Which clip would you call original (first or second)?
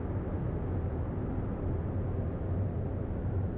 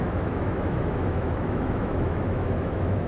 first